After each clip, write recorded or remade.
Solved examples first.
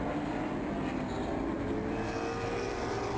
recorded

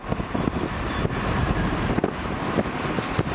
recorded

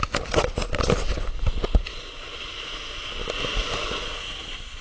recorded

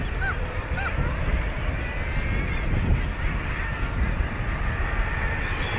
recorded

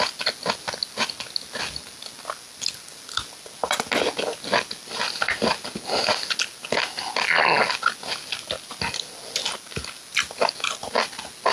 recorded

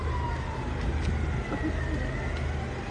recorded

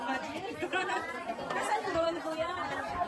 recorded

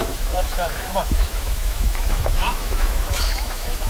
remade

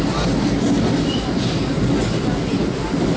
recorded